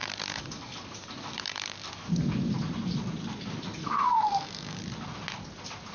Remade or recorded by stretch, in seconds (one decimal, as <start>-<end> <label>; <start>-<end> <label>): 0.0-3.8 recorded; 3.8-4.8 remade; 4.8-5.9 recorded